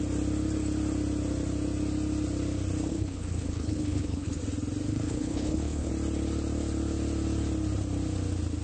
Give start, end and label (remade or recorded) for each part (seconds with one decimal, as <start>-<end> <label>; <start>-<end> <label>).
0.0-2.9 recorded; 2.9-4.4 remade; 4.4-4.9 recorded; 4.9-5.9 remade; 5.9-8.6 recorded